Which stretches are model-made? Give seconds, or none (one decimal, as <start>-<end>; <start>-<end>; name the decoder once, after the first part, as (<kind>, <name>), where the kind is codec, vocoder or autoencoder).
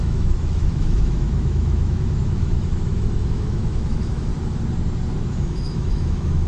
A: 0.0-4.3 (autoencoder, DAC-VAE); 5.3-6.5